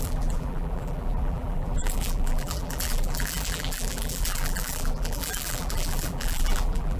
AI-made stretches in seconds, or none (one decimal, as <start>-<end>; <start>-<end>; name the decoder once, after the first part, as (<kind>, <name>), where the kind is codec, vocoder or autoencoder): 0.0-7.0 (vocoder, BigVGAN v2)

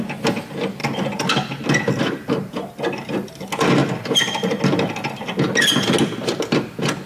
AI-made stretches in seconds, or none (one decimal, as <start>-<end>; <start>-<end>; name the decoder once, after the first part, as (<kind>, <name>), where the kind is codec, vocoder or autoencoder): none

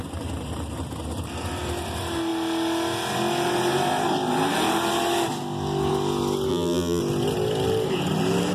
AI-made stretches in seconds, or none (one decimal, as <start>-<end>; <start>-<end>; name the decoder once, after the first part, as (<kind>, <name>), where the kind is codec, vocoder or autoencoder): 6.5-7.0 (vocoder, BigVGAN v2)

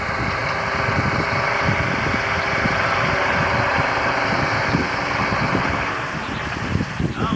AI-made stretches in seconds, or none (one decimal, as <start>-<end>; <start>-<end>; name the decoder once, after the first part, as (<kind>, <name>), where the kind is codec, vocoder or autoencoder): 0.0-0.4 (vocoder, BigVGAN v2); 3.7-7.4

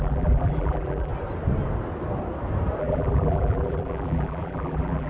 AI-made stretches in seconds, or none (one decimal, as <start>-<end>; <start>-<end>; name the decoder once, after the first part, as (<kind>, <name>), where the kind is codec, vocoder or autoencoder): 0.0-1.1 (vocoder, BigVGAN v2); 2.8-5.1

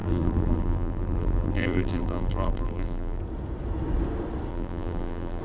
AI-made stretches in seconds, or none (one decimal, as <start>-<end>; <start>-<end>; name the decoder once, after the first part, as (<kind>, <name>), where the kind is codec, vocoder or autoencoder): 0.0-3.2 (vocoder, BigVGAN v2); 4.5-5.4

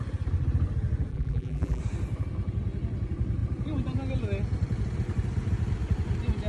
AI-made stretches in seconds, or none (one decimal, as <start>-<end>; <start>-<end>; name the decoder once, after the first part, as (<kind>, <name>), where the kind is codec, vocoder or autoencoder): 1.1-1.8 (vocoder, BigVGAN v2)